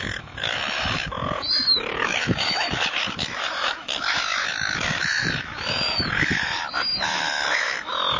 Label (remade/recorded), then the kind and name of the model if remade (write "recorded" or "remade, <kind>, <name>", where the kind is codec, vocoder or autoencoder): remade, autoencoder, DAC-VAE